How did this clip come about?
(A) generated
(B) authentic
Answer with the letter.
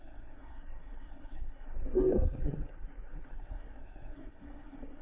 A